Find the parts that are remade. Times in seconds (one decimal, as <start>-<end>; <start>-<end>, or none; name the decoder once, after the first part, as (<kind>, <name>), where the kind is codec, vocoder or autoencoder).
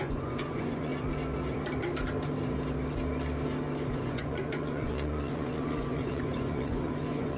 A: 0.0-0.9 (vocoder, Vocos); 3.9-7.4